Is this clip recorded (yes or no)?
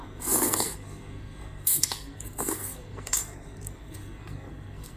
no